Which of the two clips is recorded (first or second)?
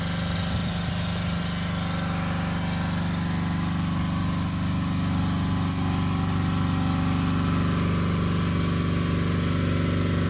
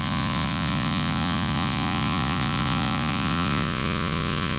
first